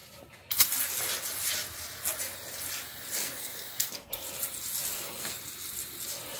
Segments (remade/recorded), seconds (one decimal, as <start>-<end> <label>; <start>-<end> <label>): 0.0-3.2 recorded; 3.2-4.1 remade; 4.1-4.9 recorded; 4.9-5.4 remade; 5.4-6.4 recorded

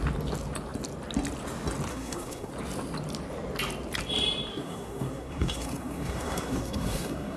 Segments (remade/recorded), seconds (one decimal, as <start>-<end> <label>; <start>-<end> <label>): 0.0-1.9 recorded; 1.9-2.5 remade; 2.5-4.5 recorded; 4.5-7.4 remade

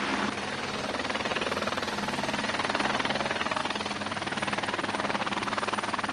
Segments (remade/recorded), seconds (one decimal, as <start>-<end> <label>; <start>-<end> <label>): 0.0-6.1 recorded